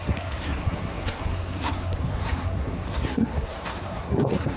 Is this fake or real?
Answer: fake